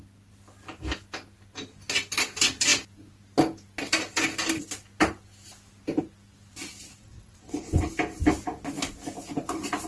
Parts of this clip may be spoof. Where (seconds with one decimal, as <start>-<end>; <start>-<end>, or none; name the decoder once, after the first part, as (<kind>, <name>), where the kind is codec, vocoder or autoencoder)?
7.0-7.9 (vocoder, WaveNeXt)